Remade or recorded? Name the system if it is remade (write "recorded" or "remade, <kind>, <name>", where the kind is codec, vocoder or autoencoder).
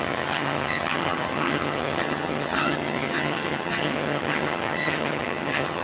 remade, vocoder, HiFi-GAN